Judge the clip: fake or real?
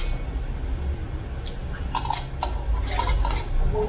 real